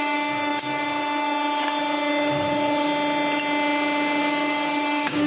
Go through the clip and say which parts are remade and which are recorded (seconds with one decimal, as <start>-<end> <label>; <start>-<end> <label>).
0.0-2.9 remade; 2.9-4.2 recorded; 4.2-5.3 remade